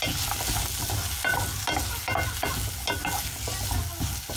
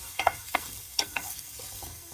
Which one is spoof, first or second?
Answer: second